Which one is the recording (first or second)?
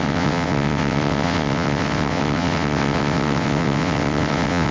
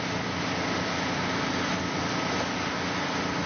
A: second